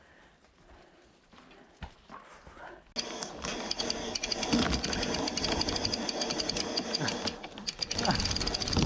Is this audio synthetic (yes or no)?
no